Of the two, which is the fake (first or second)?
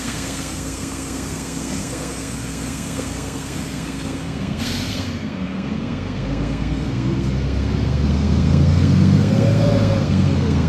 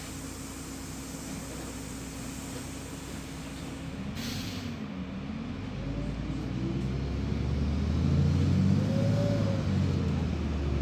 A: first